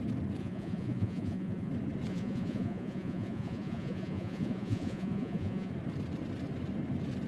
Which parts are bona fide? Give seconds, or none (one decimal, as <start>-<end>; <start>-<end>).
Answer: 0.0-0.4; 1.7-2.1; 5.7-7.3